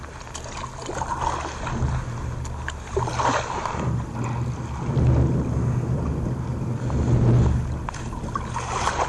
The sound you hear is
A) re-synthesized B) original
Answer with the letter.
B